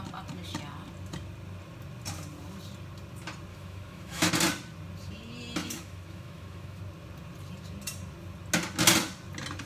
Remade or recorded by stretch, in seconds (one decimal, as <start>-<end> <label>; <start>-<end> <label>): 0.0-3.5 recorded; 3.5-4.3 remade; 4.3-5.6 recorded; 5.6-6.8 remade; 6.8-9.7 recorded